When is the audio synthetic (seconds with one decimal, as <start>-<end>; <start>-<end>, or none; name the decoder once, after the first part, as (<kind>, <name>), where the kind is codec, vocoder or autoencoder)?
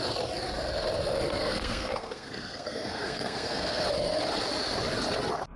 1.4-3.9 (codec, SNAC)